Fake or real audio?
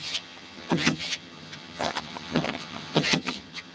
fake